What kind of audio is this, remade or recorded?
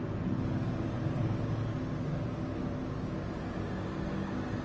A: recorded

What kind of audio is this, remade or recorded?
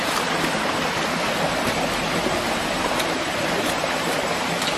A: recorded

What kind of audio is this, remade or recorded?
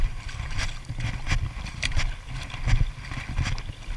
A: recorded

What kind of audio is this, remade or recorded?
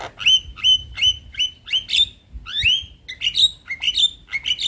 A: recorded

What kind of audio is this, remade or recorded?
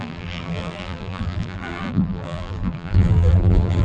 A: remade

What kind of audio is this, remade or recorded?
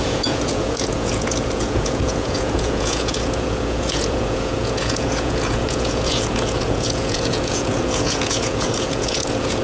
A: remade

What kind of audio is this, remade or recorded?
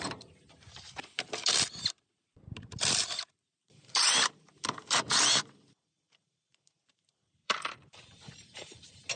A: remade